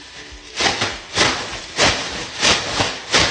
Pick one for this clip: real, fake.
real